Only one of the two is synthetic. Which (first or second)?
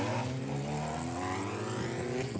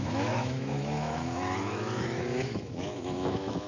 second